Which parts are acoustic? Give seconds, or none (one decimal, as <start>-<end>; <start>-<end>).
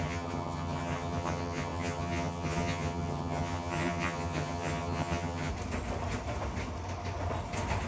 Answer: 5.5-7.9